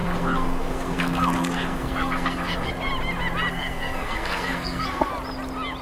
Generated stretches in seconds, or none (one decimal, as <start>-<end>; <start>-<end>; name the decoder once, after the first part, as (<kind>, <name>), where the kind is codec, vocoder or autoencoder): 0.0-2.7 (codec, SNAC); 3.5-5.1